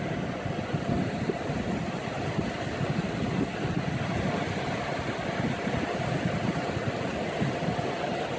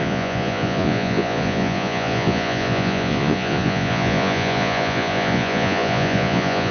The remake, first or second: second